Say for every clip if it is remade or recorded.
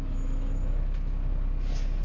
recorded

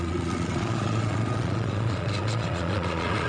remade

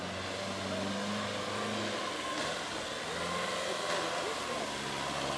recorded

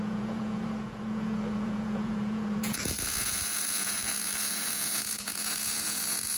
remade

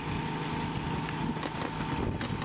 recorded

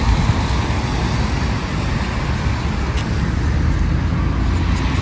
recorded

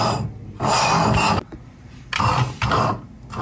recorded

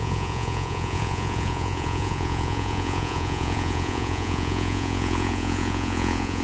remade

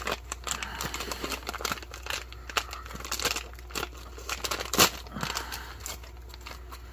recorded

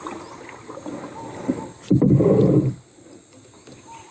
recorded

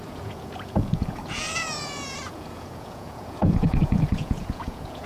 remade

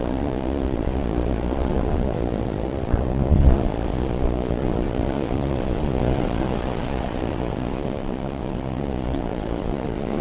remade